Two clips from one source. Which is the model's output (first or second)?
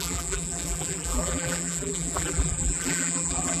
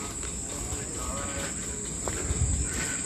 first